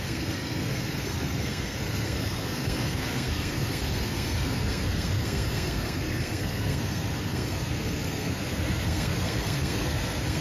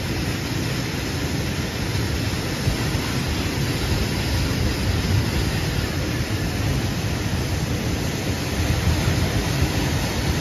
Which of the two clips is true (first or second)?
second